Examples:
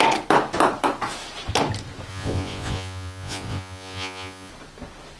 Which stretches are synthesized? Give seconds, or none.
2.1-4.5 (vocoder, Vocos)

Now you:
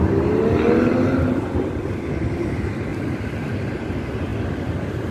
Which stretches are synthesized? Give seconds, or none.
none

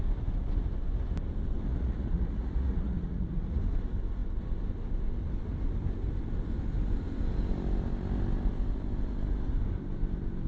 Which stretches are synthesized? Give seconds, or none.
1.7-3.6 (vocoder, Vocos)

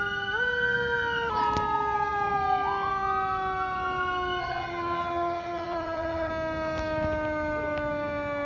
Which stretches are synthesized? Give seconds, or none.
4.4-6.3 (vocoder, HiFi-GAN)